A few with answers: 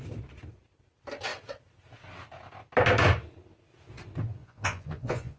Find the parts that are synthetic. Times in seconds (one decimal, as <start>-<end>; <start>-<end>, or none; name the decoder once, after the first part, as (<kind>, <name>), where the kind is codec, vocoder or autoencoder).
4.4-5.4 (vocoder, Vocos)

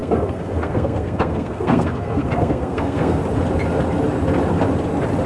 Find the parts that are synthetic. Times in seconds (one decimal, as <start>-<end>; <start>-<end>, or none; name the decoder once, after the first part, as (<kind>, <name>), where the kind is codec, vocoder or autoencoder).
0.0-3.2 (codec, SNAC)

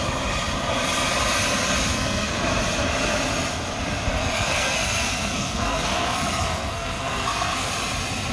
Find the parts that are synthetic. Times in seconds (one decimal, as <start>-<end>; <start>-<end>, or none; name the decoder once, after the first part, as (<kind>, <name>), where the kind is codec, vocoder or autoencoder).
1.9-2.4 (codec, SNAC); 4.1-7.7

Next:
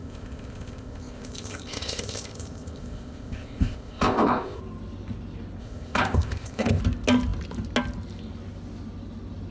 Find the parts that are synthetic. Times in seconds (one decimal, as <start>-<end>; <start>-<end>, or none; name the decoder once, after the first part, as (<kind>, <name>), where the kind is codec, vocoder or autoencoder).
0.0-4.6 (codec, ZipCodec); 5.6-6.8

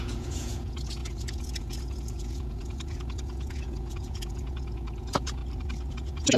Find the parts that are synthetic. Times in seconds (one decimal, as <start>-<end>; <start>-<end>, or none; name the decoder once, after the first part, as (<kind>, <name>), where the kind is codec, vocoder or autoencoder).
0.0-5.4 (vocoder, Vocos); 5.9-6.4

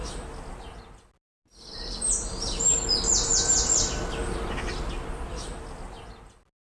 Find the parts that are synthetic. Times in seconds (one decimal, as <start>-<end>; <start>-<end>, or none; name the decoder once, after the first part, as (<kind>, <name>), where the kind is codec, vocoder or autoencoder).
none

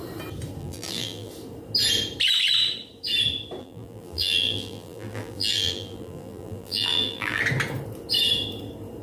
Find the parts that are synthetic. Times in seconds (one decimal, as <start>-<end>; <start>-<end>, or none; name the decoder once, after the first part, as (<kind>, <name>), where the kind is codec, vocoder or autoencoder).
0.6-1.3 (vocoder, BigVGAN v2); 3.6-7.4